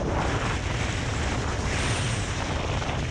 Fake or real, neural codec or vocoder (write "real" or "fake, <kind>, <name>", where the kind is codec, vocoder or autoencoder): fake, vocoder, BigVGAN v2